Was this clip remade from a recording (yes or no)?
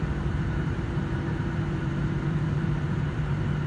yes